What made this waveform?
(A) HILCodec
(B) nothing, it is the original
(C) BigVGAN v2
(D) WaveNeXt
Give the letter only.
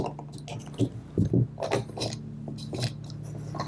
B